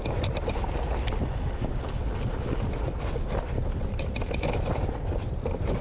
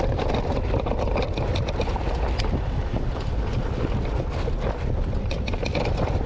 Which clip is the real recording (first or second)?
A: first